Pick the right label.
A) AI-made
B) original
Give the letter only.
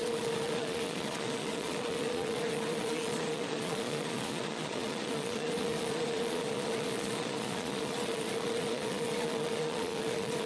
A